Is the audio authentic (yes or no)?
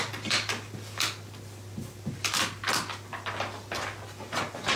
yes